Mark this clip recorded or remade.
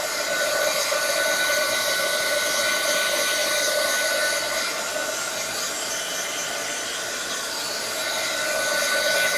recorded